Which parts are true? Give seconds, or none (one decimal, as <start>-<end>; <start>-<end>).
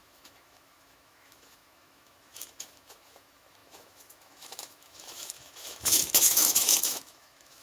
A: none